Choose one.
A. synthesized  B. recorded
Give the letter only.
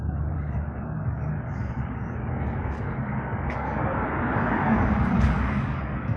A